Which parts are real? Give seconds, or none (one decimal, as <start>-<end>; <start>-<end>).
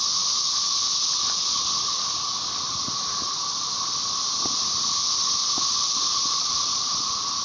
0.9-2.7